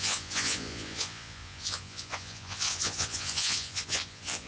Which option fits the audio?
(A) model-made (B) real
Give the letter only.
A